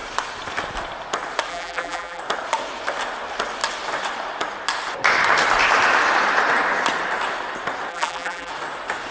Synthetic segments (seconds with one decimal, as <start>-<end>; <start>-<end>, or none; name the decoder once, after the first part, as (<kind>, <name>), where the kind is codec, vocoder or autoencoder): 1.5-2.2 (vocoder, BigVGAN v2); 7.9-8.5